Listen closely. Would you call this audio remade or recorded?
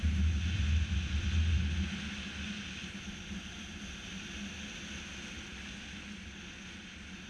recorded